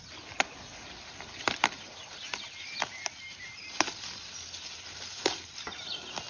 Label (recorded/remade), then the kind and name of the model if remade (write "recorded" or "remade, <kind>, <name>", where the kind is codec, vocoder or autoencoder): recorded